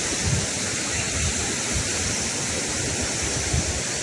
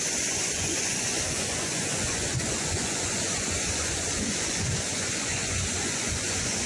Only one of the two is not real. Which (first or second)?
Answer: second